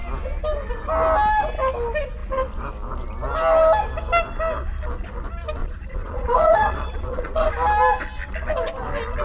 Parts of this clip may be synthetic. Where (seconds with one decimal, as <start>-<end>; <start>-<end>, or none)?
5.6-7.5